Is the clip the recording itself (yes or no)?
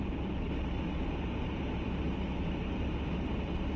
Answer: yes